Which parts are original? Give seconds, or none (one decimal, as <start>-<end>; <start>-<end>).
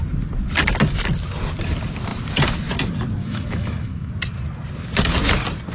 0.0-3.2; 4.1-5.7